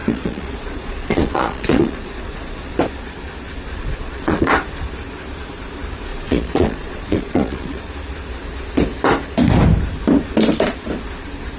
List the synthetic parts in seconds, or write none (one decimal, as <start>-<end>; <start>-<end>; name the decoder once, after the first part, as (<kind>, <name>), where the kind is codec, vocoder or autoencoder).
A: 0.0-2.6 (vocoder, Vocos); 3.9-4.5; 6.1-7.9